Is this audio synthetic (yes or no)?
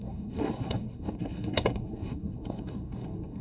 yes